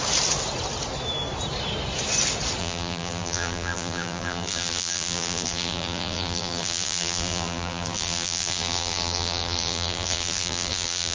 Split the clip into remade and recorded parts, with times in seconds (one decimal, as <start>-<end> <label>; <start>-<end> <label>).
0.0-2.6 recorded; 2.6-11.1 remade